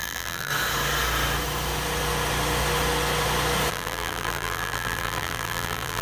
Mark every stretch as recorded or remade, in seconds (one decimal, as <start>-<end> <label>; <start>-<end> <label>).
0.0-0.5 remade; 0.5-3.7 recorded; 3.7-6.0 remade